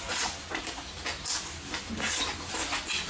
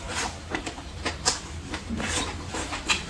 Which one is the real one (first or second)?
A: first